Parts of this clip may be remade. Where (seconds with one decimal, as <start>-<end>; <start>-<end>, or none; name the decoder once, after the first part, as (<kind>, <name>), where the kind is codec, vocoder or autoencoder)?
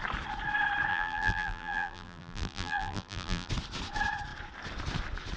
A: 0.9-3.5 (vocoder, BigVGAN v2)